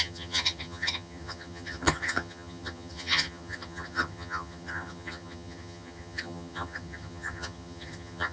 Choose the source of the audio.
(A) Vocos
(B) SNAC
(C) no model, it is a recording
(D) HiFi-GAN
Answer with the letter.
D